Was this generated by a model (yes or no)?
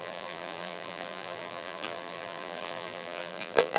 yes